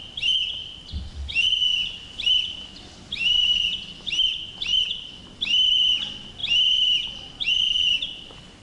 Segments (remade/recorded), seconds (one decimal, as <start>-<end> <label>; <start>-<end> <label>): 0.0-0.6 recorded; 0.6-1.3 remade; 1.3-6.4 recorded; 6.4-7.5 remade; 7.5-8.6 recorded